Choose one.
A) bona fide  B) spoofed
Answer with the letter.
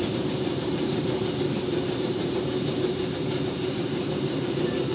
B